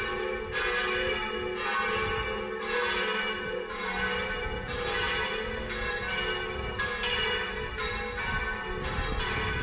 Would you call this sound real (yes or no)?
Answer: yes